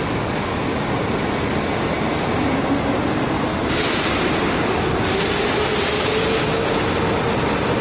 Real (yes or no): yes